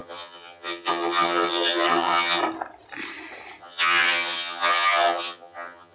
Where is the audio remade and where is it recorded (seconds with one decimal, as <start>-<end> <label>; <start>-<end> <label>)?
0.0-2.4 remade; 2.4-3.6 recorded; 3.6-5.9 remade